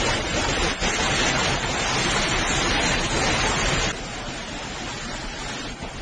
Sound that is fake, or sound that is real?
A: real